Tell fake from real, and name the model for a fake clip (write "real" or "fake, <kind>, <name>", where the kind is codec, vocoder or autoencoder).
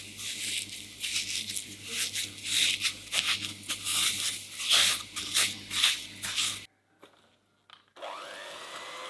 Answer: real